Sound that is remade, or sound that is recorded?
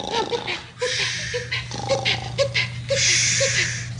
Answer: recorded